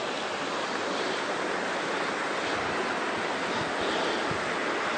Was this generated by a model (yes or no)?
no